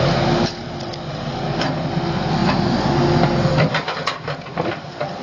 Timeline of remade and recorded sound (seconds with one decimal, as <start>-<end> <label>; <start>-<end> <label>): 0.0-5.2 recorded